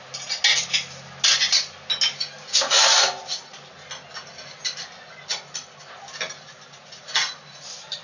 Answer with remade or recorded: recorded